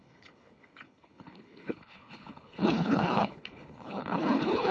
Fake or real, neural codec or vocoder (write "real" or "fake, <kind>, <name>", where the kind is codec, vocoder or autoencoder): fake, codec, HILCodec